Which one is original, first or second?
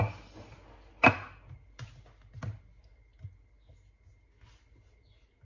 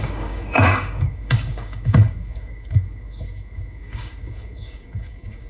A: first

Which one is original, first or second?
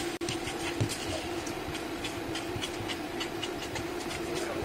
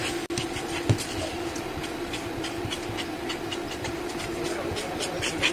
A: second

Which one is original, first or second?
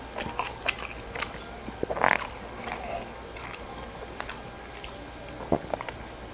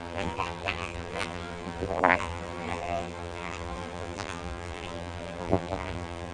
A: first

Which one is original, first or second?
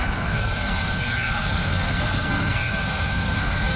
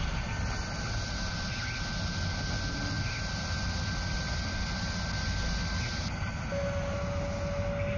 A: second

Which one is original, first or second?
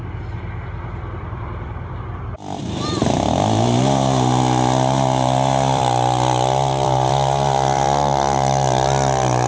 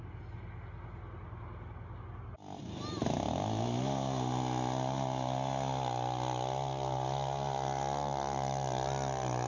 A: second